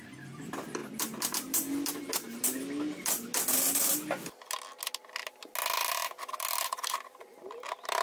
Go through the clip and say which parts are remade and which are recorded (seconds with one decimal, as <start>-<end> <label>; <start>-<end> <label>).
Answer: 0.0-8.0 recorded

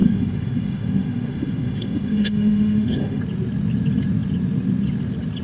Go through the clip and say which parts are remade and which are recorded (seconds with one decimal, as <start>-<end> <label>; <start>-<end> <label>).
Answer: 0.0-3.2 remade; 3.2-5.4 recorded

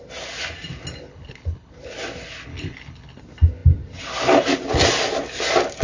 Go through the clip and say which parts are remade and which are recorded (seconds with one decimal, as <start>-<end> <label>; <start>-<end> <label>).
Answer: 0.0-1.1 recorded; 1.1-1.7 remade; 1.7-2.5 recorded; 2.5-3.2 remade; 3.2-5.8 recorded

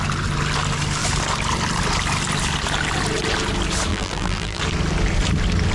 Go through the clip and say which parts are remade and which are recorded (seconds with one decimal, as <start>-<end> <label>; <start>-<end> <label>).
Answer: 0.0-3.9 recorded; 3.9-4.6 remade; 4.6-5.7 recorded